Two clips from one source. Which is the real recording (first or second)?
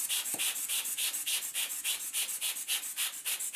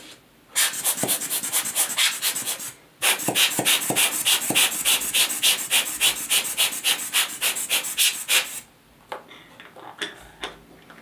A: second